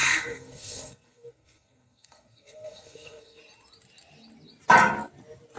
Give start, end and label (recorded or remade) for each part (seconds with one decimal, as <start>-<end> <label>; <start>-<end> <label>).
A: 0.0-3.4 remade; 3.4-5.6 recorded